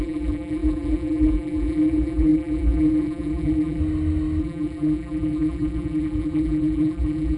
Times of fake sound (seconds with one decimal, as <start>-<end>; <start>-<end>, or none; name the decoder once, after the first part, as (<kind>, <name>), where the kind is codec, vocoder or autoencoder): 0.0-3.8 (vocoder, BigVGAN v2); 4.4-7.4